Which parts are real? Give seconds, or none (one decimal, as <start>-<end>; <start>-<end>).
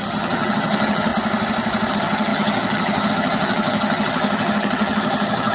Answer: 1.1-1.9